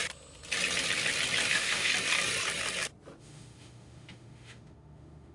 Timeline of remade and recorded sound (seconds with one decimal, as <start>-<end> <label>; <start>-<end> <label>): 0.0-1.5 recorded; 1.5-1.9 remade; 1.9-3.2 recorded; 3.2-5.3 remade